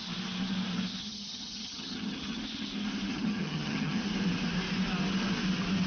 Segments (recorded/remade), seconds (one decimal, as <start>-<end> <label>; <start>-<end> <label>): 0.0-1.0 recorded; 1.0-2.4 remade; 2.4-3.1 recorded; 3.1-4.0 remade; 4.0-5.9 recorded

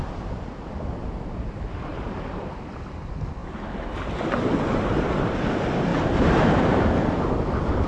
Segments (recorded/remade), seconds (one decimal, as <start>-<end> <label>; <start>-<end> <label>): 0.0-1.9 recorded; 1.9-2.7 remade; 2.7-5.9 recorded; 5.9-6.4 remade; 6.4-7.9 recorded

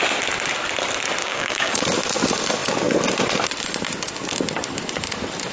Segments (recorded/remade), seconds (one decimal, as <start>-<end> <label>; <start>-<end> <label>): 0.0-1.2 recorded; 1.2-1.8 remade; 1.8-5.5 recorded

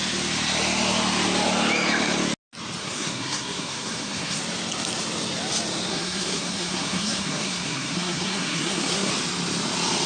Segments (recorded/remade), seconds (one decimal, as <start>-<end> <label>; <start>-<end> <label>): 0.0-2.8 recorded; 2.8-4.4 remade; 4.4-5.9 recorded; 5.9-9.1 remade; 9.1-10.1 recorded